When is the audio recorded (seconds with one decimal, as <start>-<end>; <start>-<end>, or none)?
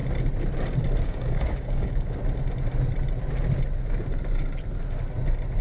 0.0-1.0; 2.2-5.6